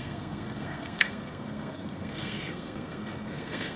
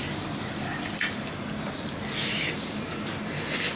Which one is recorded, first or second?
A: second